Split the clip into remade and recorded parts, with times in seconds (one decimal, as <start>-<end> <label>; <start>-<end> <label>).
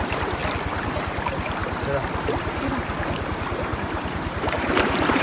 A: 0.0-0.4 remade; 0.4-0.9 recorded; 0.9-1.6 remade; 1.6-3.4 recorded; 3.4-5.2 remade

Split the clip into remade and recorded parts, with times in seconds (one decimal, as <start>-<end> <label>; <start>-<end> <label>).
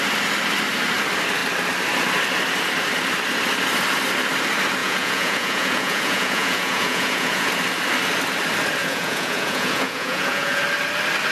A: 0.0-4.8 recorded; 4.8-7.5 remade; 7.5-8.8 recorded; 8.8-10.6 remade; 10.6-11.3 recorded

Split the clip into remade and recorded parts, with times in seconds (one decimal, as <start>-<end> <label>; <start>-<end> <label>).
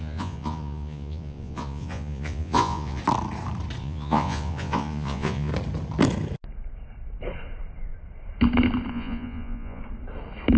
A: 0.0-3.0 remade; 3.0-3.8 recorded; 3.8-5.5 remade; 5.5-8.9 recorded; 8.9-9.8 remade; 9.8-10.6 recorded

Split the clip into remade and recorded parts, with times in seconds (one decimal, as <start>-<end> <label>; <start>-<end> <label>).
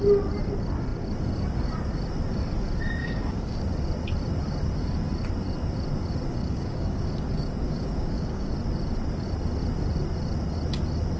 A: 0.0-3.0 recorded; 3.0-3.7 remade; 3.7-6.4 recorded; 6.4-8.5 remade; 8.5-11.2 recorded